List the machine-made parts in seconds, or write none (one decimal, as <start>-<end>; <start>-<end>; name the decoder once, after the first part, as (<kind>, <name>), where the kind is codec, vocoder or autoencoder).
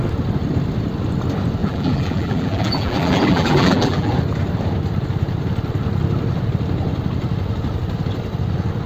1.6-4.1 (vocoder, BigVGAN v2)